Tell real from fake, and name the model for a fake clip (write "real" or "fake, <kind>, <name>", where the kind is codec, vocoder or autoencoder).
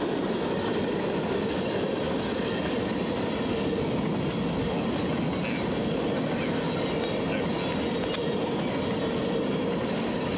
real